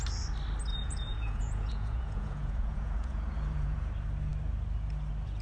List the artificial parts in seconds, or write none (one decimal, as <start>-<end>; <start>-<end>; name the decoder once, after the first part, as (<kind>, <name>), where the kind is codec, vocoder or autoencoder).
0.7-3.9 (vocoder, Vocos)